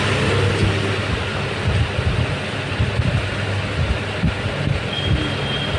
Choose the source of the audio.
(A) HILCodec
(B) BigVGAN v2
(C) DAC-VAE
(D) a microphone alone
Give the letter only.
D